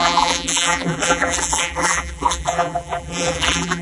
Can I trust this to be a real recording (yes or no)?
no